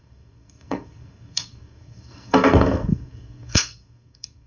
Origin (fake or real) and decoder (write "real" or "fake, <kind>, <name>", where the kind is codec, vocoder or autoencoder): fake, codec, SNAC